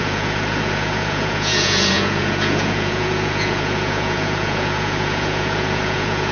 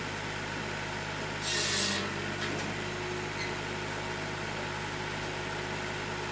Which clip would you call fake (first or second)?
first